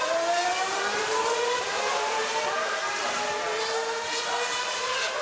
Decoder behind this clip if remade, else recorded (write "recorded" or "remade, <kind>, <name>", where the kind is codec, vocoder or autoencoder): remade, vocoder, BigVGAN v2